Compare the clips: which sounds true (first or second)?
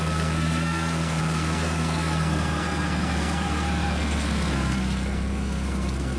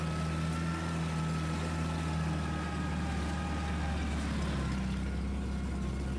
second